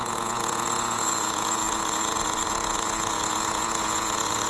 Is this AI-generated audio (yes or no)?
yes